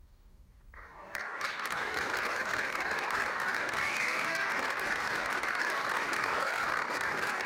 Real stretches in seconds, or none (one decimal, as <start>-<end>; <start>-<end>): none